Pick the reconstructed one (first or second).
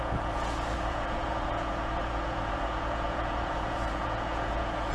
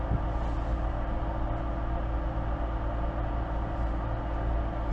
first